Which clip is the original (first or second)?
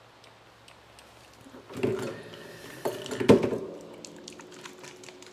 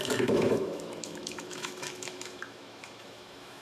first